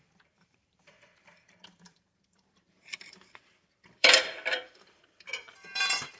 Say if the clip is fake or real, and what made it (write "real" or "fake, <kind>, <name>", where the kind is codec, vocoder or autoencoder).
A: fake, vocoder, BigVGAN v2